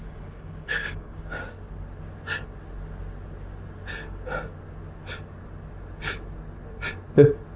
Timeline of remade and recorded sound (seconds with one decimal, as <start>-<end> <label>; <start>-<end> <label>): 0.0-1.5 remade; 1.5-7.6 recorded